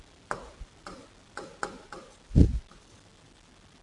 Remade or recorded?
recorded